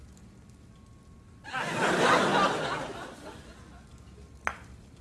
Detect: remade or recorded recorded